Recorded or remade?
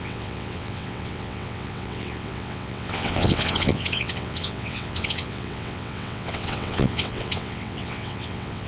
remade